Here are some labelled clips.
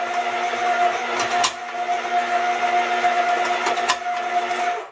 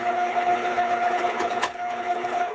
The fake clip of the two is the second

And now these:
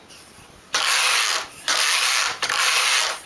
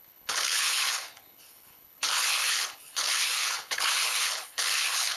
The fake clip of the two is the second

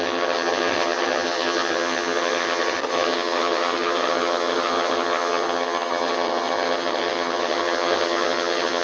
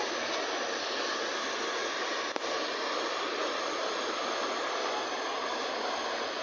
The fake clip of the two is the first